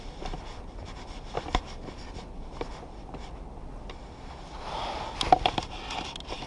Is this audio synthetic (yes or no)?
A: no